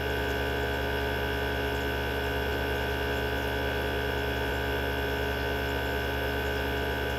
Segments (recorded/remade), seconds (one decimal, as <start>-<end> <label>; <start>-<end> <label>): 0.0-7.2 recorded